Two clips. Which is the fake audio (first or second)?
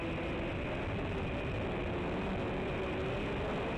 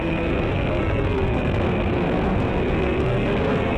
second